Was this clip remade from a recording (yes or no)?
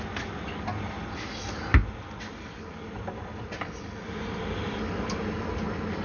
no